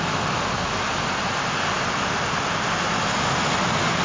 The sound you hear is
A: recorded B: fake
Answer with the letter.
A